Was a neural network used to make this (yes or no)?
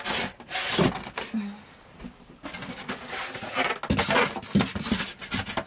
no